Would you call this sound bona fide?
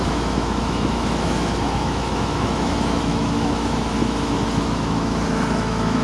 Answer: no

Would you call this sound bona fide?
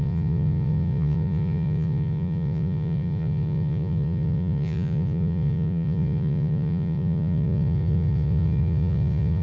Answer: no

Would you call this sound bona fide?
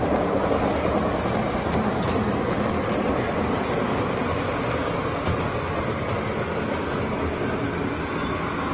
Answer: yes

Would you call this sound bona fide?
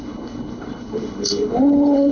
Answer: no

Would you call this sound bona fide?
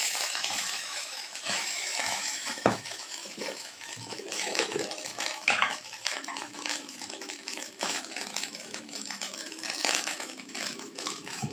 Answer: no